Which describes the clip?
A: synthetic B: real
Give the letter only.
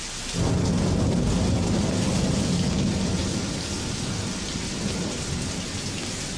B